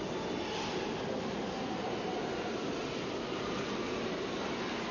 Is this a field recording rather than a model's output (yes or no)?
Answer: yes